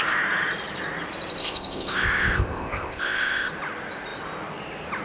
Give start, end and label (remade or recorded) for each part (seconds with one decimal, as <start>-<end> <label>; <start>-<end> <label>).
0.0-1.4 recorded; 1.4-3.5 remade; 3.5-5.0 recorded